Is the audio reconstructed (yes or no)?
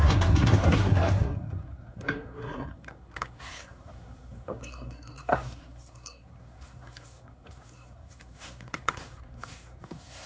yes